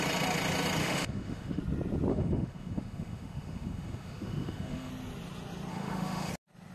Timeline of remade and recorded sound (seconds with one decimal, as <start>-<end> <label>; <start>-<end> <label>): 0.0-0.8 recorded; 0.8-1.6 remade; 1.6-2.1 recorded; 2.1-4.9 remade; 4.9-5.7 recorded; 5.7-6.3 remade; 6.3-6.7 recorded